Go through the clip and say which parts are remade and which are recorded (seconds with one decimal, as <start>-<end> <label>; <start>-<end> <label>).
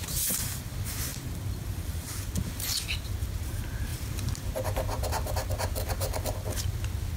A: 0.0-1.1 recorded; 1.1-2.5 remade; 2.5-3.9 recorded; 3.9-4.5 remade; 4.5-7.2 recorded